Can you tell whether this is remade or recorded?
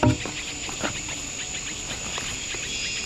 recorded